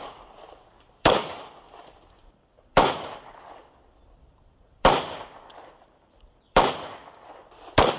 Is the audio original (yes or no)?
no